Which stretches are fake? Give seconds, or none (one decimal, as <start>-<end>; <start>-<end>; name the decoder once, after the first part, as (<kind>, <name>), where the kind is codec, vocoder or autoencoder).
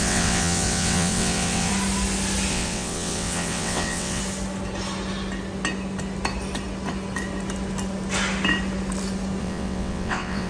0.0-1.7 (vocoder, WaveNeXt); 2.5-4.2; 9.4-10.5